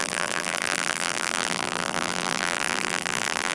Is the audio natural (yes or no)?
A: no